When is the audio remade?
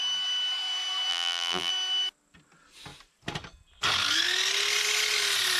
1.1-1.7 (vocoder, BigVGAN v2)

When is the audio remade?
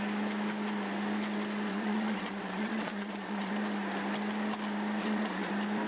1.7-3.5 (vocoder, Vocos); 5.0-5.5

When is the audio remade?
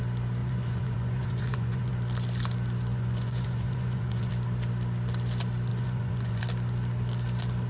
0.4-1.9 (vocoder, Vocos); 2.9-4.3; 5.7-6.4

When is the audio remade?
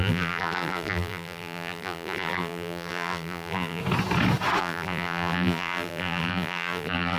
0.0-3.8 (vocoder, BigVGAN v2); 4.6-7.2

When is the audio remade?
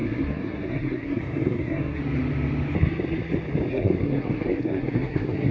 0.0-2.0 (codec, SNAC); 3.7-5.5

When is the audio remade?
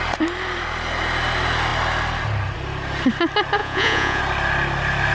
3.6-4.2 (vocoder, Vocos)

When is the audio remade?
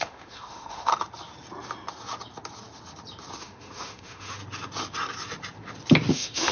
0.0-0.9 (autoencoder, DAC-VAE); 3.4-4.4; 6.1-6.5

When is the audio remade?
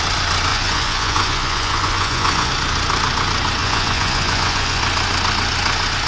0.5-2.5 (vocoder, Vocos); 3.6-4.8